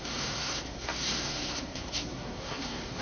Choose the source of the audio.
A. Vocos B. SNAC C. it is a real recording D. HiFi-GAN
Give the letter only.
B